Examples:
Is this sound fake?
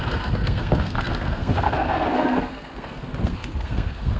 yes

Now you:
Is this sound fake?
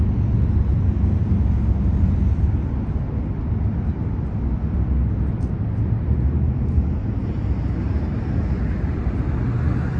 no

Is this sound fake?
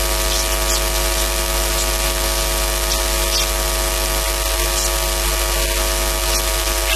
no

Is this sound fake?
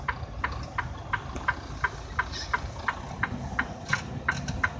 no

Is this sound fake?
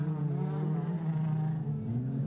no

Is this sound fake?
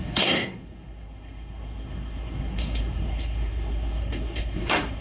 yes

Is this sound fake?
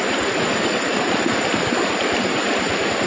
yes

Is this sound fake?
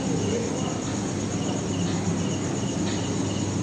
no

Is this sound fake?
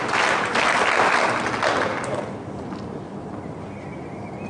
no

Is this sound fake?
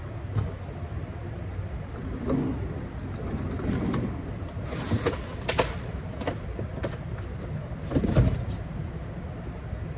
no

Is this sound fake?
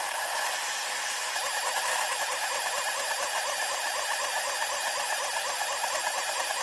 no